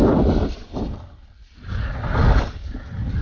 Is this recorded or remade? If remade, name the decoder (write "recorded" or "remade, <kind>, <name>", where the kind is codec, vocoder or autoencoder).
recorded